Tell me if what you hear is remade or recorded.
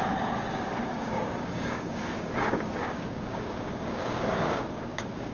remade